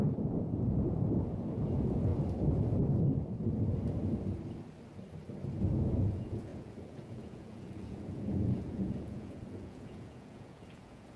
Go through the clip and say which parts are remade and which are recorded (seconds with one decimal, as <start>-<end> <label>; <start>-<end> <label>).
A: 0.0-2.1 remade; 2.1-5.6 recorded; 5.6-11.2 remade